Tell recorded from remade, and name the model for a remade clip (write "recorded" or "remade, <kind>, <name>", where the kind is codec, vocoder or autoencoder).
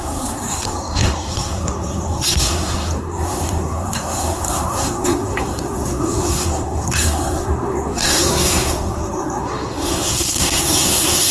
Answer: remade, codec, SNAC